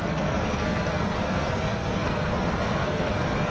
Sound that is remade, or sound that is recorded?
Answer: remade